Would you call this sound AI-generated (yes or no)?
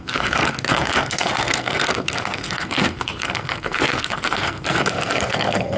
yes